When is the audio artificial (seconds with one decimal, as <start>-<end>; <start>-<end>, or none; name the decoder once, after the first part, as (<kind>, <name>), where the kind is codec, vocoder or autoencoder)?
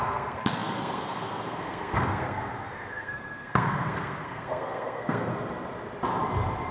0.0-5.3 (codec, SNAC)